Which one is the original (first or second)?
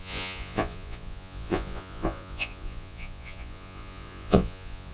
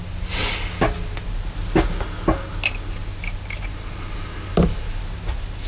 second